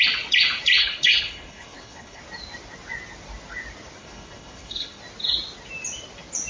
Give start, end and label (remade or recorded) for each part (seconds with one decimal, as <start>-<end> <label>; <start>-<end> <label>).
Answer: 0.0-0.8 recorded; 0.8-2.2 remade; 2.2-4.0 recorded; 4.0-5.0 remade; 5.0-6.5 recorded